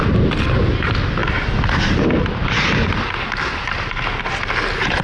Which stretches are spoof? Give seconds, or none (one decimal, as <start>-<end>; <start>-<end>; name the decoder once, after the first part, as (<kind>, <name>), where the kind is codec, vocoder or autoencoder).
none